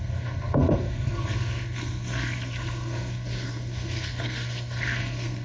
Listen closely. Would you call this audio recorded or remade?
remade